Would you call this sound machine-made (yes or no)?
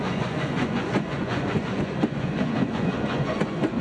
yes